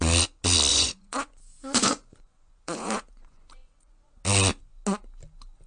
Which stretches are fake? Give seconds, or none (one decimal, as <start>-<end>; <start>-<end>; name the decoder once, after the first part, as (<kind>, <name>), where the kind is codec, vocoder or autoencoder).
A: 0.7-4.1 (vocoder, Vocos)